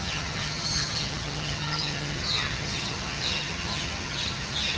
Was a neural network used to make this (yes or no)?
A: yes